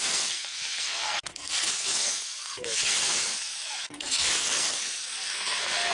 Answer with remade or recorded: remade